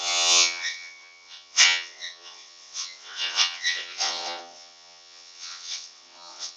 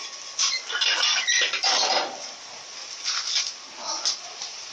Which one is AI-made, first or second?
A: first